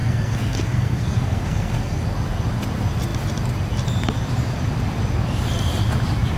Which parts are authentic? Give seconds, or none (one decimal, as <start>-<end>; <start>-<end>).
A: 2.0-6.4